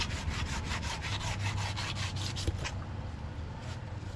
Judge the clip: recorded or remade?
recorded